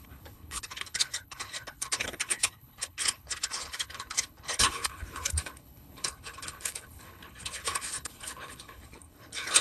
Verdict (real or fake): fake